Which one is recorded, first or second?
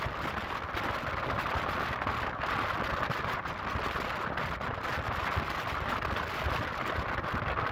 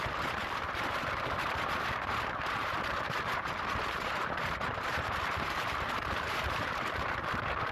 first